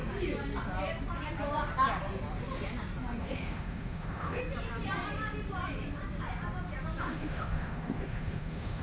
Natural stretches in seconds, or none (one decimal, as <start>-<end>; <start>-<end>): 0.0-3.2; 4.4-7.0